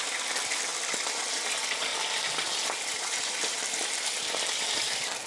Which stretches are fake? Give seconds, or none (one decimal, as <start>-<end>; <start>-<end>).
none